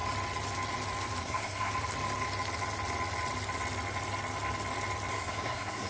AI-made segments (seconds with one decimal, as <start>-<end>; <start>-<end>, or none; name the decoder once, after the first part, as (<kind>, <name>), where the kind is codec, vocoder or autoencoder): 1.2-1.7 (codec, SNAC); 5.1-5.9